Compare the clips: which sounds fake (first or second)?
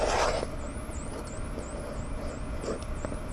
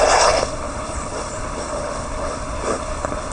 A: second